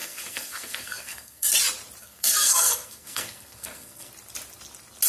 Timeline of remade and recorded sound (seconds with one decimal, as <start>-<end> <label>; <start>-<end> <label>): 0.0-1.5 remade; 1.5-2.0 recorded; 2.0-4.1 remade; 4.1-5.1 recorded